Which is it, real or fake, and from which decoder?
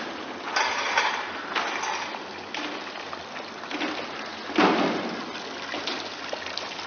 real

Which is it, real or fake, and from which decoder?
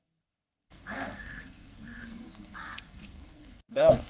fake, codec, SNAC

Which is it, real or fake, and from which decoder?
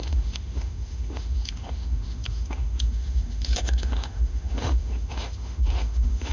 fake, autoencoder, DAC-VAE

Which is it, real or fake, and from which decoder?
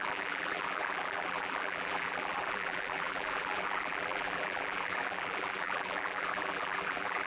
fake, vocoder, BigVGAN v2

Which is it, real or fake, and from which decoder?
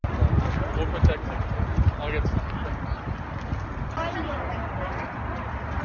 real